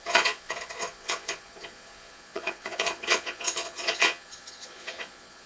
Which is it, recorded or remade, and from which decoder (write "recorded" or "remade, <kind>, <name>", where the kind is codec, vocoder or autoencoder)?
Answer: remade, vocoder, Vocos